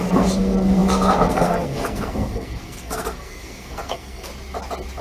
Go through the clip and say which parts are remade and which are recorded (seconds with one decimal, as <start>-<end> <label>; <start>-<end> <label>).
0.0-4.3 remade; 4.3-5.0 recorded